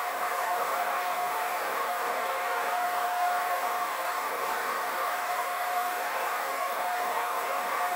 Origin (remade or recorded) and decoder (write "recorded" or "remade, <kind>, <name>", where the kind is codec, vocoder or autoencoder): remade, codec, DAC